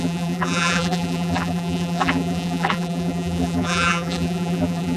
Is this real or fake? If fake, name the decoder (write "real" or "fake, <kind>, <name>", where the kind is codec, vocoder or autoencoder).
fake, vocoder, BigVGAN v2